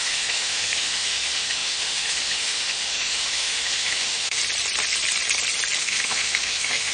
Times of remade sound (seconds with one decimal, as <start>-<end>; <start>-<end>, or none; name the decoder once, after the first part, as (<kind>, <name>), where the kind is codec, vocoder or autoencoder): 0.0-4.4 (autoencoder, DAC-VAE); 5.8-6.9